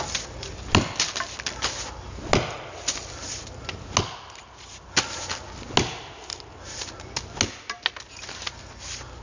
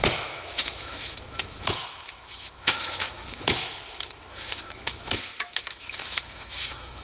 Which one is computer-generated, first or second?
second